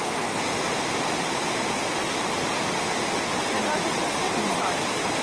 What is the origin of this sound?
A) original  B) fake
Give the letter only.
A